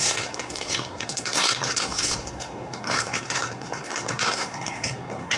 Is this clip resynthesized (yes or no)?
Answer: yes